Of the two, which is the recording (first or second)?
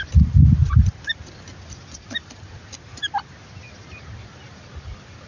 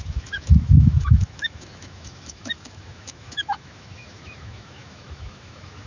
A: first